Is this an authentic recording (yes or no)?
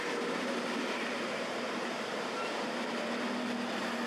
yes